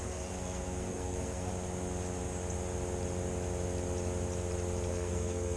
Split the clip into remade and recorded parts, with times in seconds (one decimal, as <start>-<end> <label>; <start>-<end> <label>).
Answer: 0.0-1.5 remade; 1.5-4.9 recorded; 4.9-5.6 remade